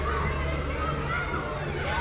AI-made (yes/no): no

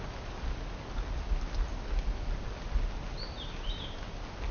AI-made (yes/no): no